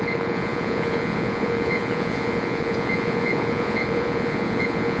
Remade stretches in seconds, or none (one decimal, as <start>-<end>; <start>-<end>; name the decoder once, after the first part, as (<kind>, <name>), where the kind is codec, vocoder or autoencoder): 0.0-5.0 (vocoder, Vocos)